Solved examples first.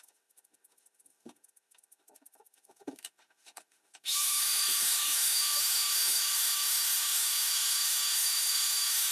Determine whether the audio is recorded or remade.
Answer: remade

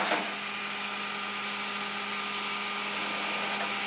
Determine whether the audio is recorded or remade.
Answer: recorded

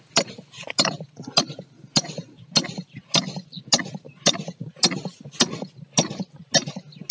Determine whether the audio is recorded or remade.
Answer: recorded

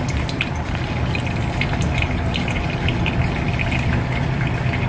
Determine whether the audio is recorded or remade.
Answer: recorded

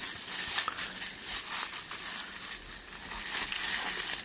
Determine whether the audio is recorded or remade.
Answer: recorded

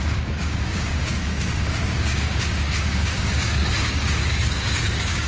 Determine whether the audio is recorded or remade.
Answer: remade